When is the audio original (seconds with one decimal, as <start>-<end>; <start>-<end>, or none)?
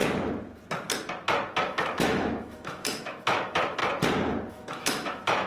0.0-1.6; 3.8-4.5